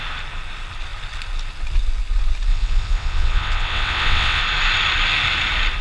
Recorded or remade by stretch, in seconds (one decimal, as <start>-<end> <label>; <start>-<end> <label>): 0.0-2.5 recorded; 2.5-4.4 remade; 4.4-5.8 recorded